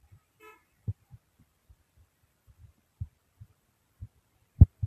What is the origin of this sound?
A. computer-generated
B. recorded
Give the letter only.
B